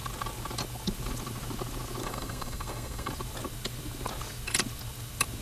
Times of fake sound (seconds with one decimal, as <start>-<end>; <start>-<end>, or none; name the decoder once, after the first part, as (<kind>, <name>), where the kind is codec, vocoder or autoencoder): 2.0-3.1 (codec, SNAC)